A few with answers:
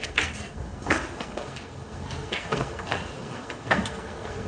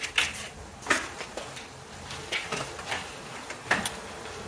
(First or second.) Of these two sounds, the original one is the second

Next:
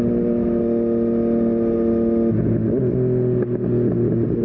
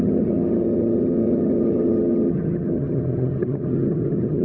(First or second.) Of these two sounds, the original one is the first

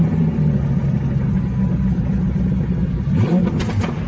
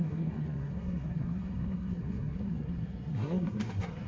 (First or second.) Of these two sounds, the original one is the first